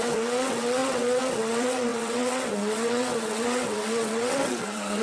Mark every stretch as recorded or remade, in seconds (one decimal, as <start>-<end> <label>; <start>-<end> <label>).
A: 0.0-5.0 remade